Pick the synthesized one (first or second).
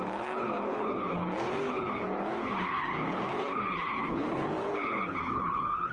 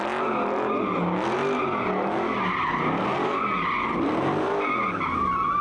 first